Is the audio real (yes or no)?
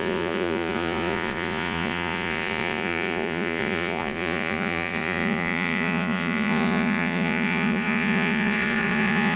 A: no